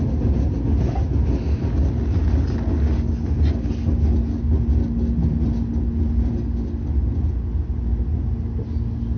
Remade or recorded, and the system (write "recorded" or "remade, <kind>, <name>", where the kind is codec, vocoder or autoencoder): recorded